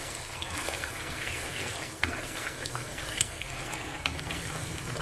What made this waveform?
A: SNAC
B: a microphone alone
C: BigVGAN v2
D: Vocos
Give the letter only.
A